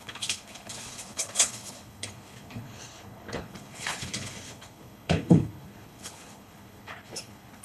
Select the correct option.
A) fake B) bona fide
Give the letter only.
A